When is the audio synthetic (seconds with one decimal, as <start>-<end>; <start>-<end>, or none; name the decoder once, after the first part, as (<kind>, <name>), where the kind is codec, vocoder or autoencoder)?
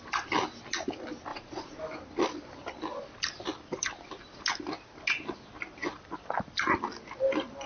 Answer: 1.3-1.8 (vocoder, Vocos)